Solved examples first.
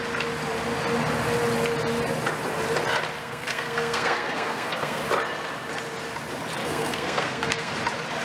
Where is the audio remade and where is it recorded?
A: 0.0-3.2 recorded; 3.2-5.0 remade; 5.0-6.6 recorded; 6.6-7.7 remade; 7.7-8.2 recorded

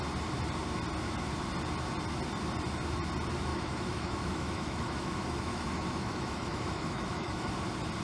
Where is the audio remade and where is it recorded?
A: 0.0-3.5 recorded; 3.5-7.5 remade; 7.5-8.0 recorded

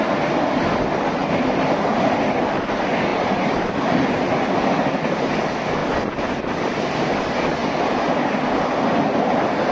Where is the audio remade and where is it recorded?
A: 0.0-1.2 recorded; 1.2-1.7 remade; 1.7-3.1 recorded; 3.1-3.7 remade; 3.7-9.7 recorded

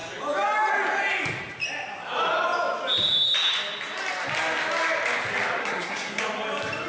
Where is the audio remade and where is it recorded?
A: 0.0-5.6 recorded; 5.6-6.2 remade; 6.2-6.9 recorded